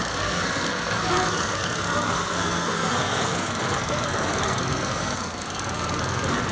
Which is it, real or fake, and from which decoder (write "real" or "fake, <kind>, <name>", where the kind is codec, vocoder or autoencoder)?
fake, codec, SNAC